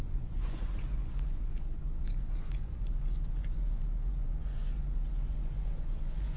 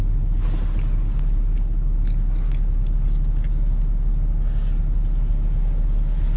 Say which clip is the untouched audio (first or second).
second